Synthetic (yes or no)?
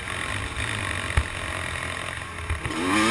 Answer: no